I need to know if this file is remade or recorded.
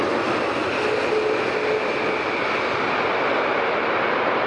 recorded